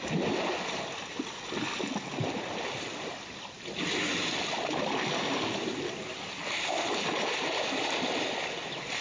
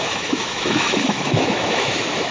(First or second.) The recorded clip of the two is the first